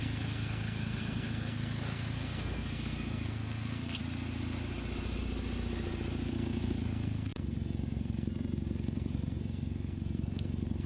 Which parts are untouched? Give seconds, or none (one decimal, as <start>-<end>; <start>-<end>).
4.0-6.3